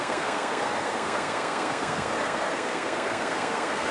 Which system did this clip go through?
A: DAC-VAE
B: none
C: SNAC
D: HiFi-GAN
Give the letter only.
C